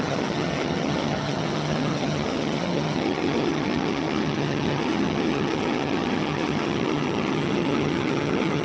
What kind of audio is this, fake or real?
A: fake